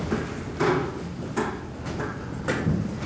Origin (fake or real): real